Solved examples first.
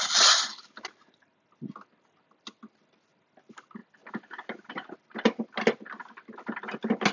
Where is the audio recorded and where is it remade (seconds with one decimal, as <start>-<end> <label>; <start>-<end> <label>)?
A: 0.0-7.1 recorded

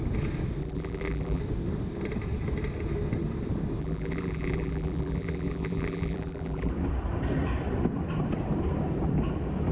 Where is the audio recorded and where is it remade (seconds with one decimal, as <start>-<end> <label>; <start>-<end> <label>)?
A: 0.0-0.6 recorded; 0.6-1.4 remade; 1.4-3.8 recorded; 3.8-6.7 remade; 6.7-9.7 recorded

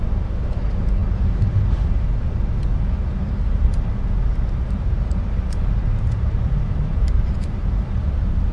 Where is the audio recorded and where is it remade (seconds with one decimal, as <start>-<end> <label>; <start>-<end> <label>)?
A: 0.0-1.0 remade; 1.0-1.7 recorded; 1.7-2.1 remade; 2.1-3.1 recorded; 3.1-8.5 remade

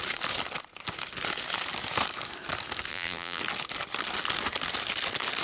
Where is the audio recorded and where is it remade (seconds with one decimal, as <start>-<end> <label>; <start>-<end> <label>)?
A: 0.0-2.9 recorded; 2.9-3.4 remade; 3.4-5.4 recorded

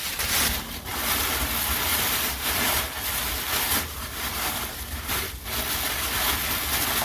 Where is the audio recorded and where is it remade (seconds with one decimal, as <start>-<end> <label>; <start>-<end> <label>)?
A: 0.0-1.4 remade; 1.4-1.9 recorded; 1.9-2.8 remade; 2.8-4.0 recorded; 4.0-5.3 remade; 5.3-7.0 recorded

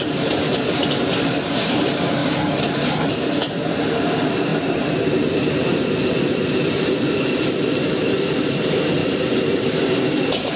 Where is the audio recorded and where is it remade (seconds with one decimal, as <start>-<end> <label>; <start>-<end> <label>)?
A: 0.0-2.2 remade; 2.2-3.1 recorded; 3.1-9.0 remade; 9.0-9.5 recorded; 9.5-10.6 remade

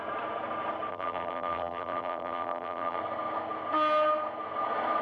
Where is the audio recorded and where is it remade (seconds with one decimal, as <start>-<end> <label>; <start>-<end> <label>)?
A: 0.0-0.9 recorded; 0.9-3.0 remade; 3.0-5.0 recorded

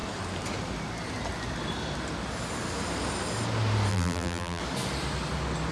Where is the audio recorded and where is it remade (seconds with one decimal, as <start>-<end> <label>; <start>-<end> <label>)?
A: 0.0-3.9 recorded; 3.9-4.6 remade; 4.6-5.7 recorded